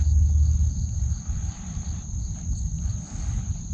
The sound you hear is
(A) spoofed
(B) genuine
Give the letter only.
B